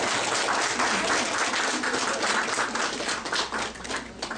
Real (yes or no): yes